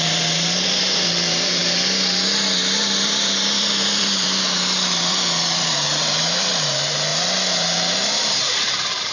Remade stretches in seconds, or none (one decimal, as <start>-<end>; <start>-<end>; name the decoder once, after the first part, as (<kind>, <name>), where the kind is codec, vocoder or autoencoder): 0.0-1.6 (vocoder, BigVGAN v2); 2.5-7.1; 8.4-9.1